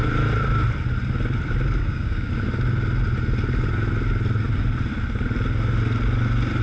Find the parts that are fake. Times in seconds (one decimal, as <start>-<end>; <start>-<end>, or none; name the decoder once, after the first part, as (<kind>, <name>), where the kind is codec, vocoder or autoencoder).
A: 1.8-2.3 (codec, DAC)